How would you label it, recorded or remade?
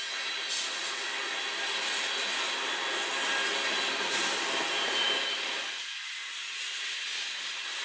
recorded